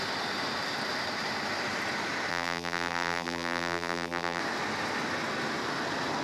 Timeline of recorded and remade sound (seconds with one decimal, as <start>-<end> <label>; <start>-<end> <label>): 0.0-2.3 recorded; 2.3-4.4 remade; 4.4-6.2 recorded